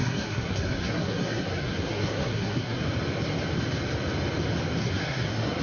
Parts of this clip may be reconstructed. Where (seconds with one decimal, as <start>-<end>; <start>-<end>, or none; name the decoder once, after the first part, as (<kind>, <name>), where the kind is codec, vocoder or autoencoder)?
0.0-2.8 (codec, SNAC); 4.8-5.6